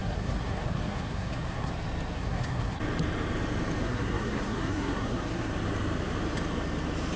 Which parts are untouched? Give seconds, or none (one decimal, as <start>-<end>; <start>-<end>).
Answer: 1.7-2.1; 2.8-3.8; 5.5-7.2